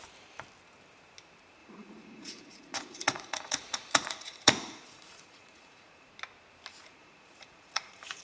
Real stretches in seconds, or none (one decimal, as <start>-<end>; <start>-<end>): 0.0-1.6; 6.1-6.7